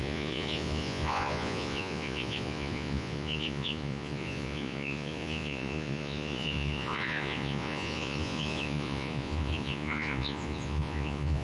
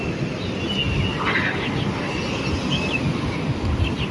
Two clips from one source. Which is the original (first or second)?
second